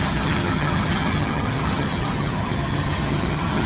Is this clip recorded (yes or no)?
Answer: no